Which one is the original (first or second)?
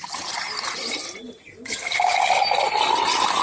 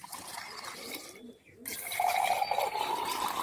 first